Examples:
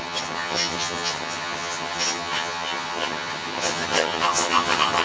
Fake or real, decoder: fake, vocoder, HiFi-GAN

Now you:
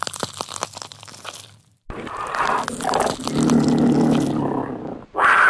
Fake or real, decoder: real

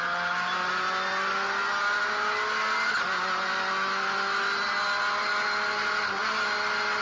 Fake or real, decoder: real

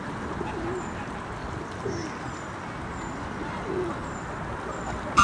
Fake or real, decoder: real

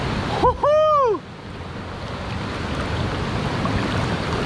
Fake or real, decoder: real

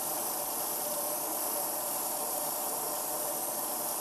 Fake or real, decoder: real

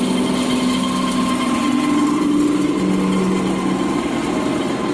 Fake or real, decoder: real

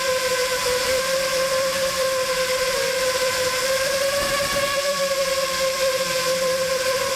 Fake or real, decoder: fake, vocoder, BigVGAN v2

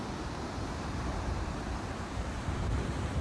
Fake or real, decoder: fake, vocoder, BigVGAN v2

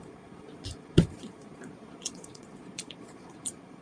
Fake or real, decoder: fake, vocoder, Vocos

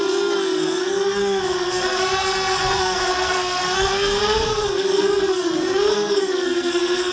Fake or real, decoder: fake, codec, SNAC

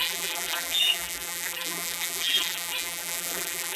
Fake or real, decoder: fake, vocoder, BigVGAN v2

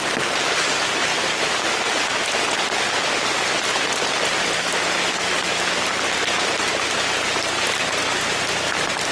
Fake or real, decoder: real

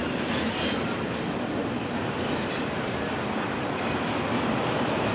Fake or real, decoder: fake, vocoder, BigVGAN v2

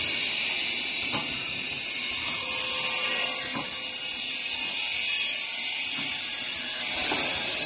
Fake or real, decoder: real